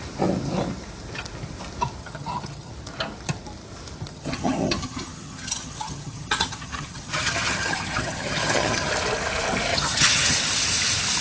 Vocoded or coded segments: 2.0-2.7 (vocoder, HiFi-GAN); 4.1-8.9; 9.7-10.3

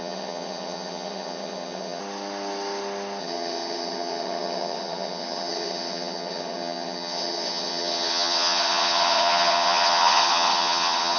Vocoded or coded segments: 0.0-2.0 (vocoder, HiFi-GAN); 3.2-11.2

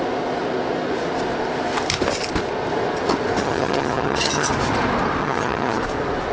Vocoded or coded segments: 3.4-4.5 (vocoder, HiFi-GAN); 5.2-5.8

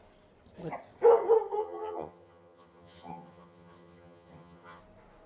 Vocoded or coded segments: 1.6-4.8 (vocoder, HiFi-GAN)

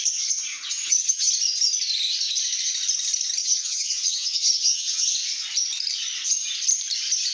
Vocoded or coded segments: 0.5-1.3 (vocoder, HiFi-GAN); 3.4-5.1

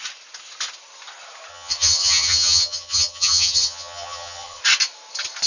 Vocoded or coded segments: 1.5-4.6 (vocoder, HiFi-GAN)

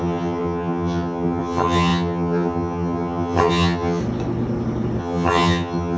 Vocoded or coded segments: 0.0-4.0 (vocoder, HiFi-GAN); 5.0-6.0

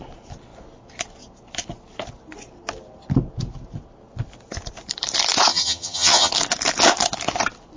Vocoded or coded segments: 5.5-6.3 (vocoder, HiFi-GAN)